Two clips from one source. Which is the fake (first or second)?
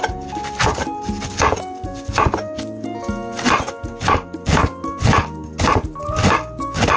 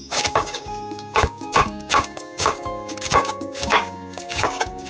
second